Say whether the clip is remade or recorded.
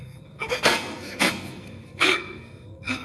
remade